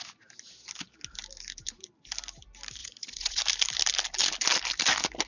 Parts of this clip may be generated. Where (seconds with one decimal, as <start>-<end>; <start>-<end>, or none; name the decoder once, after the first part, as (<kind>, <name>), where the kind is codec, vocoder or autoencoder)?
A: 2.8-3.4 (vocoder, Vocos)